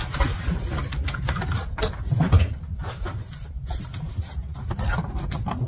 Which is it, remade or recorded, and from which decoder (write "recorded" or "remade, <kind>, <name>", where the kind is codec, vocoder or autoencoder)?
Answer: recorded